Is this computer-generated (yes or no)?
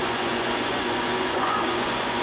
yes